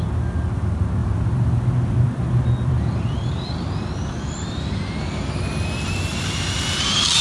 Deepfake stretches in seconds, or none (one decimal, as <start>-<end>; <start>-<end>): 1.0-5.3; 6.1-7.2

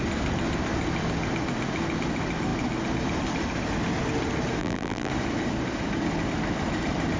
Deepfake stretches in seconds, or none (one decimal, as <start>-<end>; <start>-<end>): 4.6-5.1

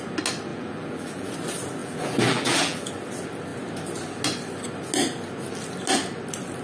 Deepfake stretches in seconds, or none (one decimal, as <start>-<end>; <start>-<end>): 0.5-1.3; 1.8-2.9